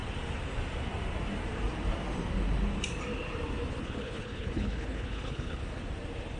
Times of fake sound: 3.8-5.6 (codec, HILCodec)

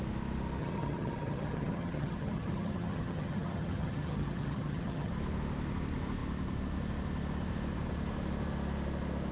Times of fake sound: 0.6-5.1 (vocoder, HiFi-GAN)

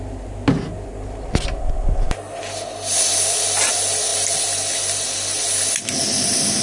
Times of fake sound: none